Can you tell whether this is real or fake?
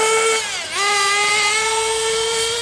real